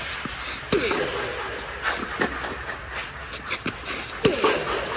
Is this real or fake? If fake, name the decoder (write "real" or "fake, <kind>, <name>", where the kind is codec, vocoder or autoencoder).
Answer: real